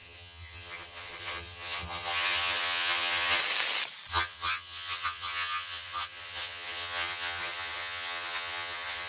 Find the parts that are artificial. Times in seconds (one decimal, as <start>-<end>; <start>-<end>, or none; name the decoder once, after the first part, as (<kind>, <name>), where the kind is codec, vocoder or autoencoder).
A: 0.0-3.4 (vocoder, HiFi-GAN); 4.1-9.1